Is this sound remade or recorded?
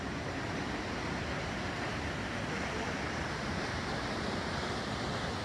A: recorded